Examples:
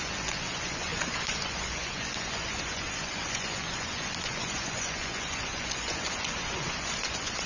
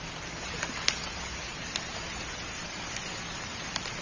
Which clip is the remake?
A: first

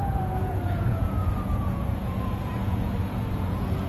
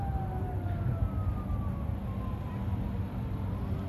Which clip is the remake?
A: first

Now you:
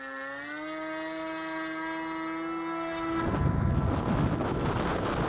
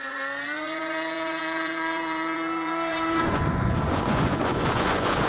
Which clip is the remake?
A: second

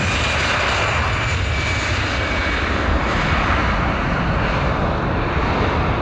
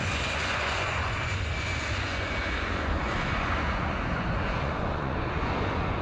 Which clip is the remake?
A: second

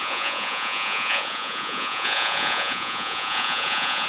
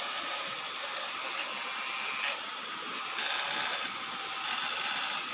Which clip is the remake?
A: first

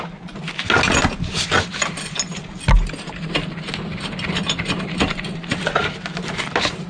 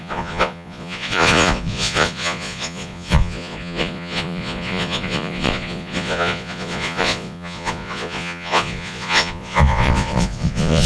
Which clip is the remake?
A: second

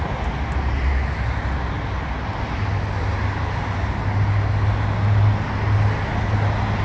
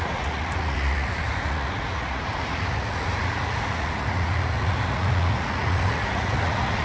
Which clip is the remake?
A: second